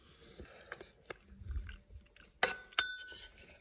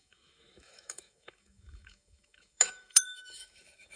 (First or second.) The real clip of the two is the first